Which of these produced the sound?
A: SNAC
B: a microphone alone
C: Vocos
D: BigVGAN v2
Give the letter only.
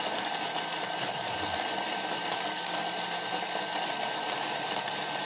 B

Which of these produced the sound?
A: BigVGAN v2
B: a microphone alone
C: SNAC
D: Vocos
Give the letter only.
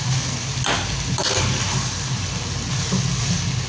B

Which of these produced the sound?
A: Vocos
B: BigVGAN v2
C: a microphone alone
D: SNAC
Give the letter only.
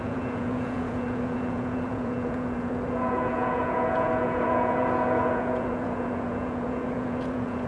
A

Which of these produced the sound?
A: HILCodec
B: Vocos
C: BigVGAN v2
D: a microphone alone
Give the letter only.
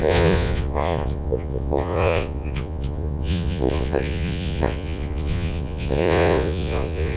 B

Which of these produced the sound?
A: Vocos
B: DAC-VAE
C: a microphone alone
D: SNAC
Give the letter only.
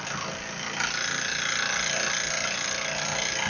C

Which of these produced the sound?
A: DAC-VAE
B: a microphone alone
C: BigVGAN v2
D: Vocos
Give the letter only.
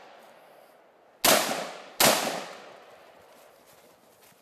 B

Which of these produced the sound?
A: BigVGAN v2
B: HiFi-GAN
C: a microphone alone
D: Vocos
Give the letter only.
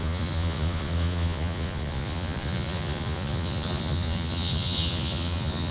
D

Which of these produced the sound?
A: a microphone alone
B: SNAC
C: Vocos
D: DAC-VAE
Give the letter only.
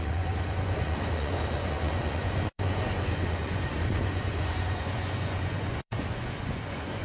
C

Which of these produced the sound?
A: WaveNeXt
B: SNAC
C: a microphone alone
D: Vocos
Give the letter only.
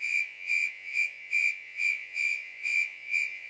D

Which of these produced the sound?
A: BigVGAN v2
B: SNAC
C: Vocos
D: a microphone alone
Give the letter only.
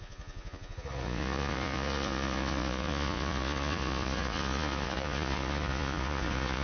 C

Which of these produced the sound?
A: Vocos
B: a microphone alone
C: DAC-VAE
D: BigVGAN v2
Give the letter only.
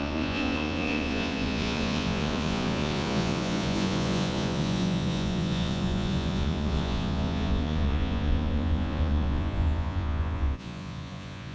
A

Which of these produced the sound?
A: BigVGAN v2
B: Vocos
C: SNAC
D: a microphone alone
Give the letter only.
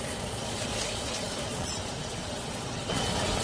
B